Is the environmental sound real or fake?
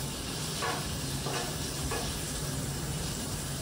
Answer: real